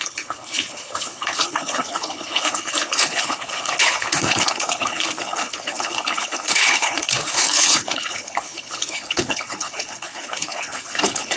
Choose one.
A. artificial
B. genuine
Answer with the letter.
A